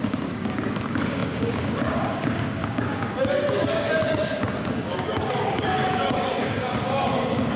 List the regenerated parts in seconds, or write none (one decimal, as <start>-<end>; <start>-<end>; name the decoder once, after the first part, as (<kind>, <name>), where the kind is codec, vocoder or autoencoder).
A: 0.0-7.6 (codec, DAC)